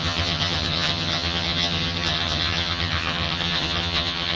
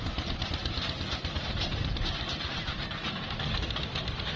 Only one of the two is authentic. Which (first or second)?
second